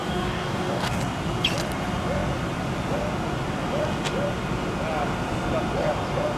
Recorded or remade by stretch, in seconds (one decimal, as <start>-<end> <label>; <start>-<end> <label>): 0.0-1.0 remade; 1.0-6.4 recorded